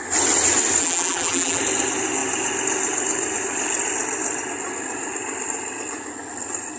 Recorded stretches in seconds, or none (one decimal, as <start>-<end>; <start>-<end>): 0.0-0.8; 1.6-6.8